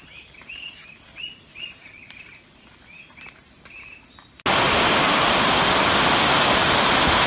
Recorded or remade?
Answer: recorded